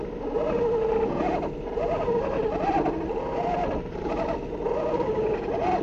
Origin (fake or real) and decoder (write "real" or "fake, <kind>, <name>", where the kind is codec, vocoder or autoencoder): real